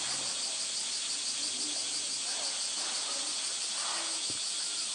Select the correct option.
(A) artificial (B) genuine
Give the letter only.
B